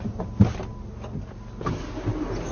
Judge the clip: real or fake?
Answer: real